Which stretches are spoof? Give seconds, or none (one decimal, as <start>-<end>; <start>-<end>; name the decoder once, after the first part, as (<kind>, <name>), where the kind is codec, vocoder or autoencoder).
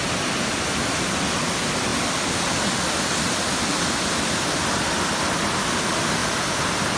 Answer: none